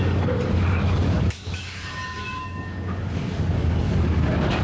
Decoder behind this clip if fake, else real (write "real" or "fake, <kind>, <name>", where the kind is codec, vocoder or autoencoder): fake, codec, DAC